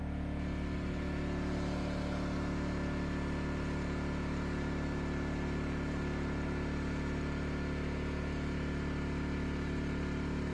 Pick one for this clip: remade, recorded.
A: recorded